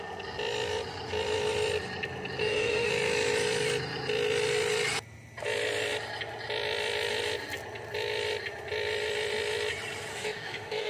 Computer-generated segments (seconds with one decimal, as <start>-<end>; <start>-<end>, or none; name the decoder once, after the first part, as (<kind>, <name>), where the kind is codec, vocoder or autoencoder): 2.4-2.9 (autoencoder, DAC-VAE); 10.1-10.9